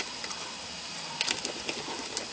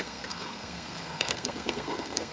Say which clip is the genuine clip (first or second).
first